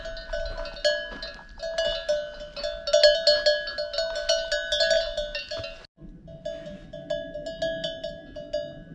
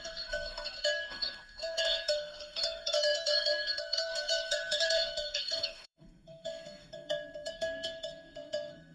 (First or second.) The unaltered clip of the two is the first